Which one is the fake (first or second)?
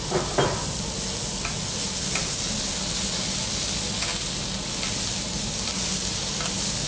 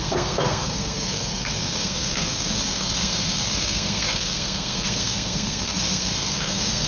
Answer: second